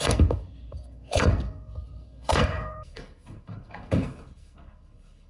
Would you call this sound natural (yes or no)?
no